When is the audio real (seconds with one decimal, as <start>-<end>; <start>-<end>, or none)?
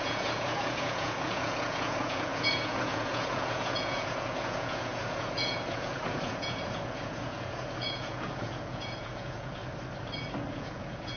9.6-10.5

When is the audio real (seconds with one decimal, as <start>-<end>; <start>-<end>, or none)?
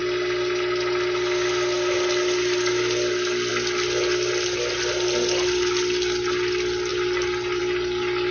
0.0-8.3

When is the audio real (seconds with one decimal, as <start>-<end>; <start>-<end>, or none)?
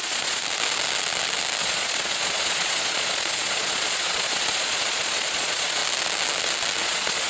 0.4-1.6; 5.8-6.8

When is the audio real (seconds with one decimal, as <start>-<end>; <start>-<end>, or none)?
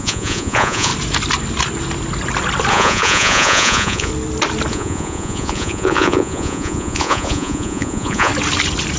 0.9-2.7; 4.1-4.7; 8.3-9.0